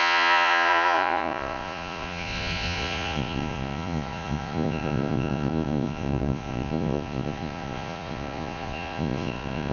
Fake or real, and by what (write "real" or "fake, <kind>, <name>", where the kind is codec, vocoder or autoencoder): fake, vocoder, Vocos